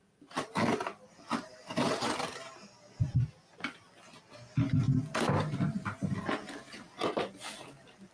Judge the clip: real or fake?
real